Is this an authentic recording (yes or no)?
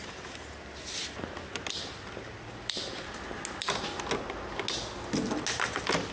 yes